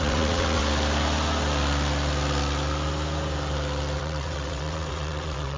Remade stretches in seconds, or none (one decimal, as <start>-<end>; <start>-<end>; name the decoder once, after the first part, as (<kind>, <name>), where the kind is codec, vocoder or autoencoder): 0.0-0.6 (vocoder, WaveNeXt); 4.0-5.6